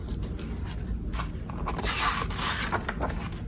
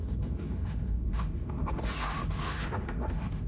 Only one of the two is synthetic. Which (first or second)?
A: second